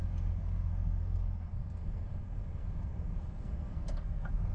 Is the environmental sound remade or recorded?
remade